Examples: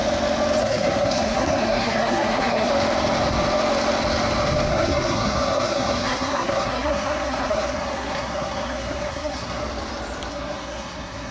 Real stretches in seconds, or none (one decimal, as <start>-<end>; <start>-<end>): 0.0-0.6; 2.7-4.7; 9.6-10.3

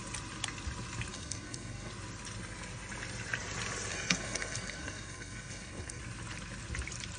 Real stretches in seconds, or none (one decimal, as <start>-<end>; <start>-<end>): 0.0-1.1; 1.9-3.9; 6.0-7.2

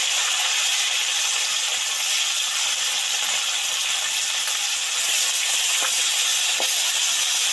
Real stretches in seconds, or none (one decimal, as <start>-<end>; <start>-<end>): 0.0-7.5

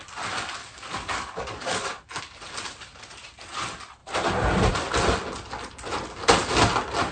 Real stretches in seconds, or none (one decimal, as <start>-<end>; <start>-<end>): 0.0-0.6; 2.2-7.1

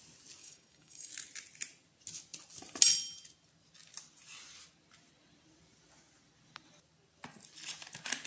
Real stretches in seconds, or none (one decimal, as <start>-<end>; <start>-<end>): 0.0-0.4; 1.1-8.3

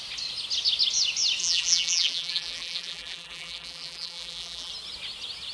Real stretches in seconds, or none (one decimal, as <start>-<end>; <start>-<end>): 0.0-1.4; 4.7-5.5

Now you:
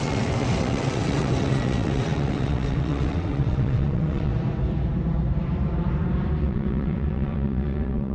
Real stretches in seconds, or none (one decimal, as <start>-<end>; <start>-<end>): 4.3-6.4

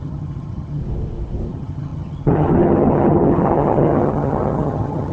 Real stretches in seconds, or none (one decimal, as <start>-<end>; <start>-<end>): 0.8-1.5